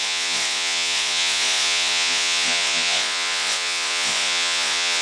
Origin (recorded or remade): remade